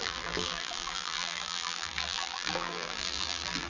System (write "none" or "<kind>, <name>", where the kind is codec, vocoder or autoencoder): vocoder, BigVGAN v2